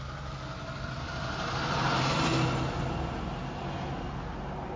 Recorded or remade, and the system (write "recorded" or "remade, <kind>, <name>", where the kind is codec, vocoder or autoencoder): recorded